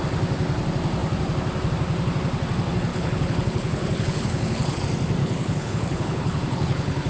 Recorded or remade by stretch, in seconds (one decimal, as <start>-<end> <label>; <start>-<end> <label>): 0.0-2.9 recorded; 2.9-4.8 remade; 4.8-5.2 recorded; 5.2-7.1 remade